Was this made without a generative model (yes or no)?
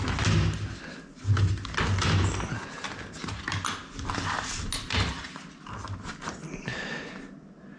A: yes